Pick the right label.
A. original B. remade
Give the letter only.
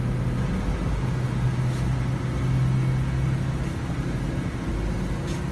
A